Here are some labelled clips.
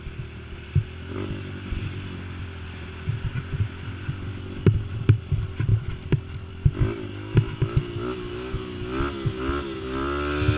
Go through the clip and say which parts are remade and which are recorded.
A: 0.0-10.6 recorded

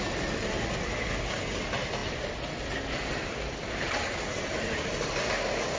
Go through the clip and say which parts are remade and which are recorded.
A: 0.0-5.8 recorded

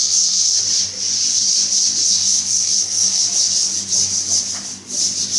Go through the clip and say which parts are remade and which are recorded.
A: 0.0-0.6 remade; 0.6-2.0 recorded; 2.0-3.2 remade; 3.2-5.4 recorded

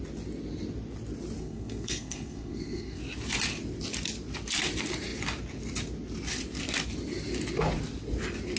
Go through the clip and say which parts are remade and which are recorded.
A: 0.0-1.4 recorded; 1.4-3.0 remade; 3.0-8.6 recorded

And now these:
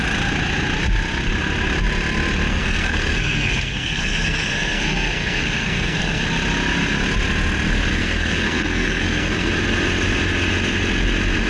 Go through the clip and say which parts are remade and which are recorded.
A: 0.0-2.5 recorded; 2.5-6.2 remade; 6.2-7.9 recorded; 7.9-9.5 remade; 9.5-11.5 recorded

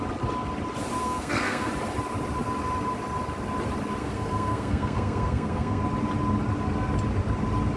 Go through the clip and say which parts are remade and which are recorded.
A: 0.0-1.0 recorded; 1.0-1.7 remade; 1.7-4.0 recorded; 4.0-5.8 remade; 5.8-7.8 recorded